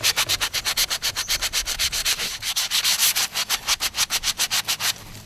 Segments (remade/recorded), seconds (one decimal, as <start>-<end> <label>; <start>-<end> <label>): 0.0-3.0 remade; 3.0-4.3 recorded; 4.3-5.3 remade